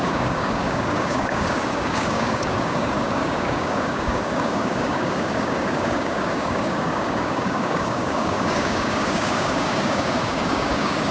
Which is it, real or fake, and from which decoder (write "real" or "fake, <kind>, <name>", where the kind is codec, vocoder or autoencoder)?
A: fake, codec, DAC